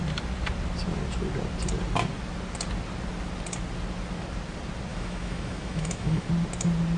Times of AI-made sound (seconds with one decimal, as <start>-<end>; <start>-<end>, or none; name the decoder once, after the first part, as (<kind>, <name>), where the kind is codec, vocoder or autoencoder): 4.9-6.3 (autoencoder, DAC-VAE)